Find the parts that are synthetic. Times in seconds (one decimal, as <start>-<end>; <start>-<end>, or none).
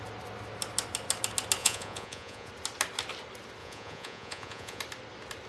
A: 1.6-2.5; 3.6-4.8